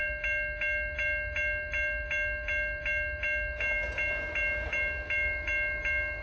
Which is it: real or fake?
real